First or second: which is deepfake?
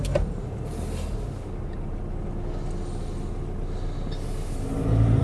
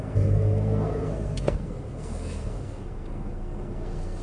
second